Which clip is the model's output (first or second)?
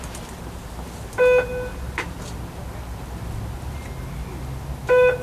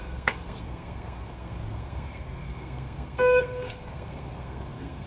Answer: second